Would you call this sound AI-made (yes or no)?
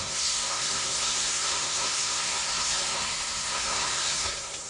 yes